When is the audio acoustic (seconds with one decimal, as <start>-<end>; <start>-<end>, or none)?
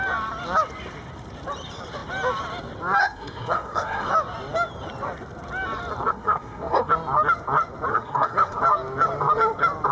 0.0-3.0; 4.1-6.1; 6.9-7.9; 8.6-9.9